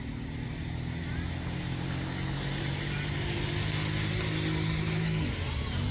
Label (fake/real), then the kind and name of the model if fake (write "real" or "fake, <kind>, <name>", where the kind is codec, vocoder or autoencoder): real